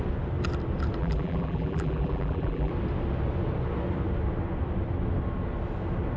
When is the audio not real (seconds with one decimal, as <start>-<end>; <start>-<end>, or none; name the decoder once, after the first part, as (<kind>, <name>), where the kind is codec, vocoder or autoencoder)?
1.0-2.7 (vocoder, BigVGAN v2)